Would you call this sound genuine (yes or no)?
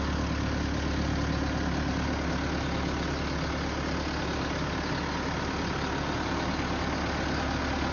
yes